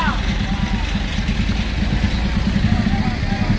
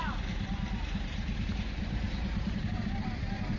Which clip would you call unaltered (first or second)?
first